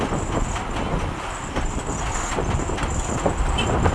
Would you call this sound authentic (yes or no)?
yes